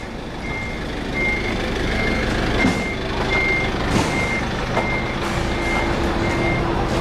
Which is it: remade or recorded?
recorded